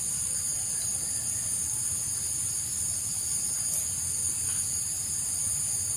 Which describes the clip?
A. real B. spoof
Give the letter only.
A